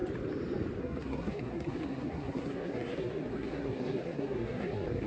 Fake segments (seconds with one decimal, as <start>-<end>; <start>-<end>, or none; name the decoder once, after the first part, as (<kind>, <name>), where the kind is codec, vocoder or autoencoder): 0.8-5.1 (codec, SNAC)